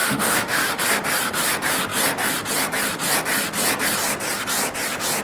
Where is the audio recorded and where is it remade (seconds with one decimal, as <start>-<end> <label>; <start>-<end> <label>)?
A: 0.0-0.8 remade; 0.8-5.2 recorded